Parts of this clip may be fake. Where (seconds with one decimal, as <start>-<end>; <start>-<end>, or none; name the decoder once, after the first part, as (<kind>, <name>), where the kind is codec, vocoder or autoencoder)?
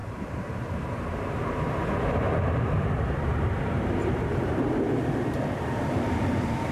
0.0-6.7 (vocoder, BigVGAN v2)